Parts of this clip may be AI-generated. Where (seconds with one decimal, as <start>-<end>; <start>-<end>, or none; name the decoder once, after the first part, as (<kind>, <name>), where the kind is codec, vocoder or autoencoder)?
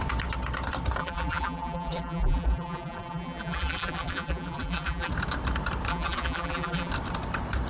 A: 1.0-5.1 (vocoder, BigVGAN v2); 5.9-6.9